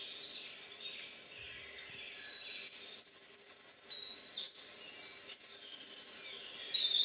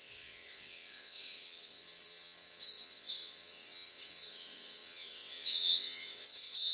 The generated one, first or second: second